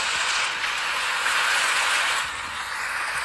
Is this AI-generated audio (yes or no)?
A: yes